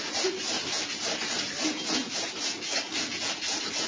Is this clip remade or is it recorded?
recorded